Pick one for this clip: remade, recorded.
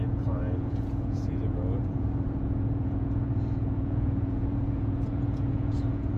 remade